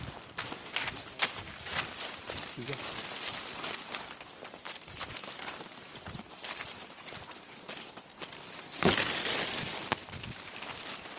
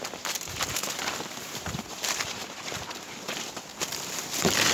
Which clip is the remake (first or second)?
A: first